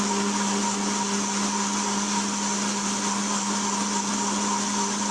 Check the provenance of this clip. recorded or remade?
recorded